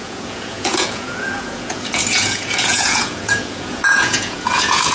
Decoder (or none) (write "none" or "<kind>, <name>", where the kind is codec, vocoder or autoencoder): vocoder, Vocos